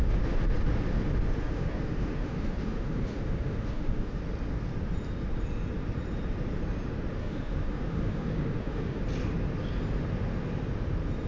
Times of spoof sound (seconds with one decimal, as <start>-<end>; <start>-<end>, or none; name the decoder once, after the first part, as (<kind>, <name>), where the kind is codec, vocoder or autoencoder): 1.4-4.2 (autoencoder, DAC-VAE); 7.2-9.0